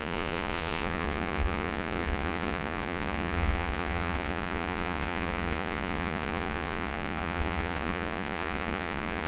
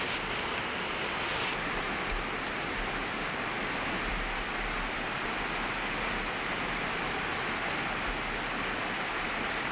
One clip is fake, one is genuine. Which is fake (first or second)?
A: first